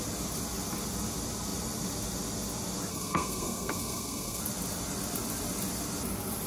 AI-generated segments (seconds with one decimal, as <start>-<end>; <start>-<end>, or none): 2.9-4.4